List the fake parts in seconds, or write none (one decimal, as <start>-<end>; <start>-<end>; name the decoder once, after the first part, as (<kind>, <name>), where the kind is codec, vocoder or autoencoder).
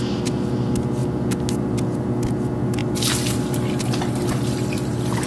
none